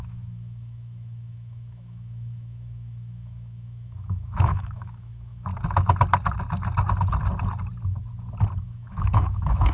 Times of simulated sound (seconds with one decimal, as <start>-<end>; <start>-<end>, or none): 0.0-5.5; 8.6-9.7